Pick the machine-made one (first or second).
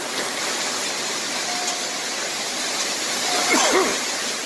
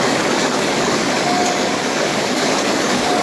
second